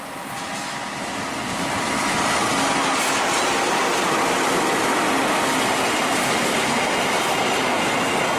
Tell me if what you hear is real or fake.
real